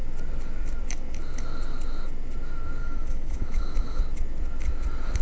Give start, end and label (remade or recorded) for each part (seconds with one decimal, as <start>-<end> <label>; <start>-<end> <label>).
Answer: 0.0-2.8 recorded; 2.8-4.0 remade; 4.0-5.2 recorded